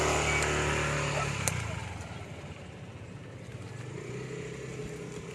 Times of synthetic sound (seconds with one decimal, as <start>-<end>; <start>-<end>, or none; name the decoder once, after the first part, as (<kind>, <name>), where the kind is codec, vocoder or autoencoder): none